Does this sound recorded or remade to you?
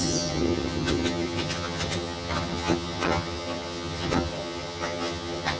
remade